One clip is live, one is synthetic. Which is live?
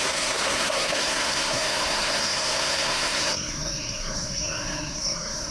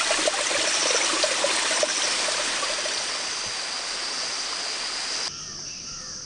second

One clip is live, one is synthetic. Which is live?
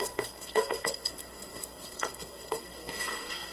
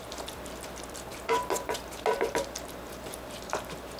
second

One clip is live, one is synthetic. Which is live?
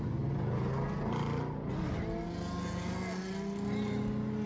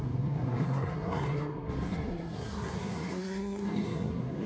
first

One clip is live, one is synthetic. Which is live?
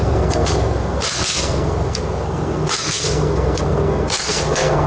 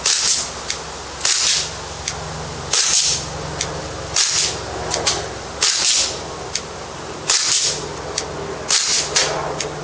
second